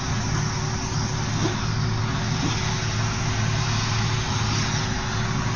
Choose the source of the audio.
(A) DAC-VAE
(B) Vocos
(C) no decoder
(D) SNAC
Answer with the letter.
C